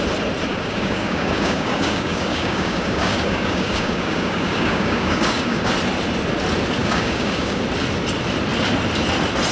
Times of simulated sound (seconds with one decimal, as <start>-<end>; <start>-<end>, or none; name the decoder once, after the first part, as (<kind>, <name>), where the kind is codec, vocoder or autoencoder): 0.5-5.7 (codec, DAC); 6.8-7.6

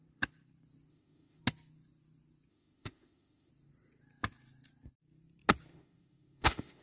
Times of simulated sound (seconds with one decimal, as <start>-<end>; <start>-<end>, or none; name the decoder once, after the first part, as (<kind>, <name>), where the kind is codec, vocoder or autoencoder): 0.9-1.4 (autoencoder, DAC-VAE); 2.5-3.5; 5.7-6.8

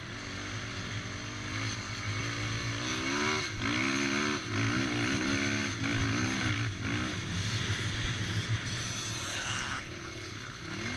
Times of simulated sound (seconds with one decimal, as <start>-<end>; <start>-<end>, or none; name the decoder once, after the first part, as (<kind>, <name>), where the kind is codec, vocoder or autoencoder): 9.3-10.6 (codec, HILCodec)

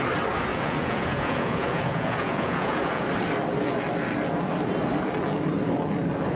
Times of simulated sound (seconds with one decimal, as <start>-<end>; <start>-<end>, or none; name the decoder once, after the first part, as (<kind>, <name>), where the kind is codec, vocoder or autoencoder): 0.5-3.0 (vocoder, Vocos)

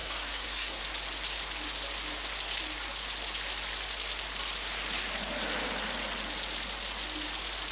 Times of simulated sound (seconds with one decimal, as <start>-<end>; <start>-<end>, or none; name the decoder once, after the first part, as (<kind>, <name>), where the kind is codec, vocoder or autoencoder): 0.0-0.8 (codec, SNAC)

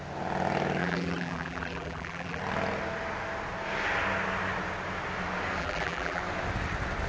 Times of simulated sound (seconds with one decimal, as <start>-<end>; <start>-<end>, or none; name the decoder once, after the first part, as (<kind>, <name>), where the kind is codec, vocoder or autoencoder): 0.8-2.4 (vocoder, BigVGAN v2); 5.6-6.2

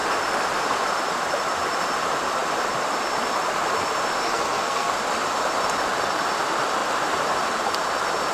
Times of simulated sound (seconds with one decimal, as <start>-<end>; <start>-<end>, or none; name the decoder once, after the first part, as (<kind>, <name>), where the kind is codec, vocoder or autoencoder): 4.2-4.9 (codec, SNAC)

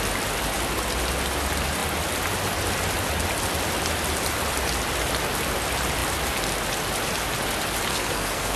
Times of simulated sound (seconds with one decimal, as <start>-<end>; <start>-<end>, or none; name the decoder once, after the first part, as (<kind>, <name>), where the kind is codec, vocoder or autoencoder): 7.9-8.6 (codec, SNAC)